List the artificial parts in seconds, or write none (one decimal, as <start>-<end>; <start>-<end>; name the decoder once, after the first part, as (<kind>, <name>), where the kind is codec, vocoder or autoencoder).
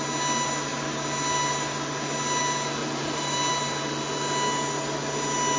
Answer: 2.8-3.5 (vocoder, BigVGAN v2)